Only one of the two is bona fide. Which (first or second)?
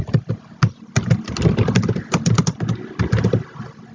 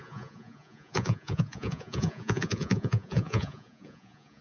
first